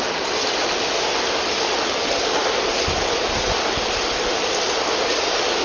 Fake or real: real